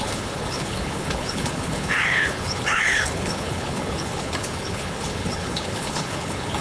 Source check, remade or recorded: remade